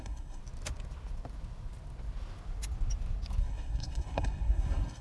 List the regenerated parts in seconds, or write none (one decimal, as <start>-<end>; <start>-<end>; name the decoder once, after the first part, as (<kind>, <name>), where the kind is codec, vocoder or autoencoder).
0.0-0.4 (codec, SNAC); 3.4-5.0